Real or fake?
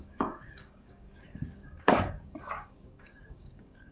fake